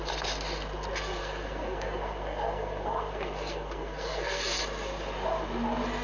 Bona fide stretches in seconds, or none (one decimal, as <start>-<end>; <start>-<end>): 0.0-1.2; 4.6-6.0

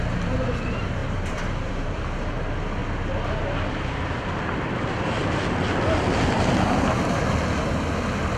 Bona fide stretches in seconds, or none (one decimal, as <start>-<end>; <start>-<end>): 0.0-1.0; 2.0-8.4

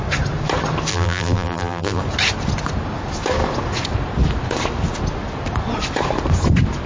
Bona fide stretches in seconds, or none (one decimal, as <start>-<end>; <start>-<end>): 0.0-0.9; 2.0-6.9

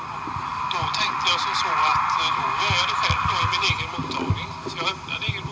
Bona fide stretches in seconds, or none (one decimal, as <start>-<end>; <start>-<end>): 0.0-5.5